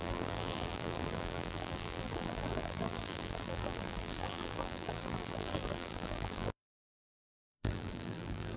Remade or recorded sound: remade